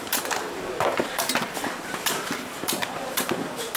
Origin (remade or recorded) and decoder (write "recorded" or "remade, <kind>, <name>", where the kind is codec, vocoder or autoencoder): remade, vocoder, BigVGAN v2